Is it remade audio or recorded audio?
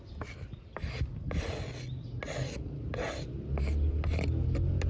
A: recorded